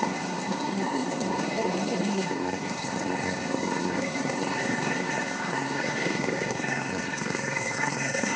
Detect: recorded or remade remade